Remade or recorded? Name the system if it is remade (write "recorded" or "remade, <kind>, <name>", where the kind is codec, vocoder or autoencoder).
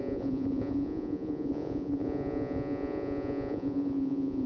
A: remade, vocoder, Vocos